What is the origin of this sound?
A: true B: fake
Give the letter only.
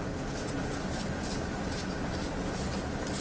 A